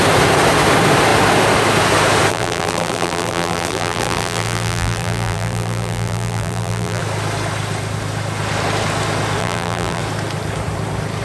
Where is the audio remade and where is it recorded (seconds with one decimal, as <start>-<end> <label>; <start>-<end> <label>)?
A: 0.0-2.3 recorded; 2.3-7.0 remade; 7.0-9.4 recorded; 9.4-10.0 remade; 10.0-11.2 recorded